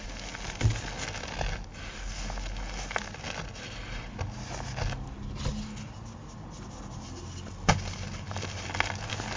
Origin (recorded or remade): recorded